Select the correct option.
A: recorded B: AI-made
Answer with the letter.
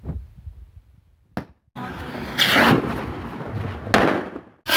A